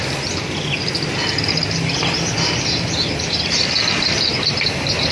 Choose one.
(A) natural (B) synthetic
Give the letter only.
A